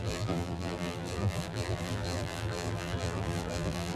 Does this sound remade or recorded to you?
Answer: remade